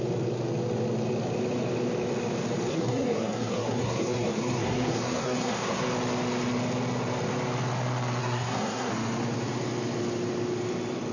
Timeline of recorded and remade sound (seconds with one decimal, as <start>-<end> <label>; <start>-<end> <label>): 0.0-2.7 recorded; 2.7-5.8 remade; 5.8-8.2 recorded; 8.2-8.9 remade; 8.9-11.1 recorded